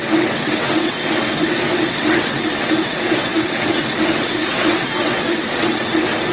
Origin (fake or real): fake